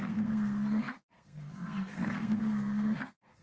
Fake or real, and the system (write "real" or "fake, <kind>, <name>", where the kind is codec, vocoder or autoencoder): fake, codec, SNAC